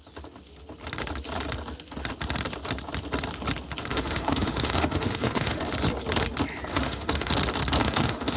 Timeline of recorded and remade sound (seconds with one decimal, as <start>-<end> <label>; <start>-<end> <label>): 0.0-3.9 recorded; 3.9-5.6 remade; 5.6-6.7 recorded; 6.7-7.3 remade; 7.3-7.8 recorded; 7.8-8.4 remade